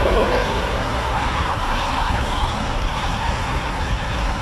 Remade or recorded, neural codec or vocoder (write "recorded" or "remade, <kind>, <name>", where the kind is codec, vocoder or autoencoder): remade, codec, SNAC